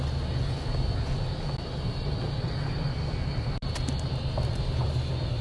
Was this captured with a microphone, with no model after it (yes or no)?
yes